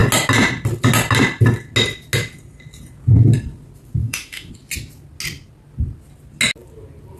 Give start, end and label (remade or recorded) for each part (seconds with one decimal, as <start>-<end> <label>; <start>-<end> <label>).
0.0-4.0 recorded; 4.0-4.5 remade; 4.5-7.2 recorded